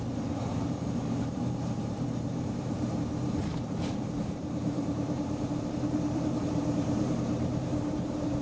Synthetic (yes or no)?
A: yes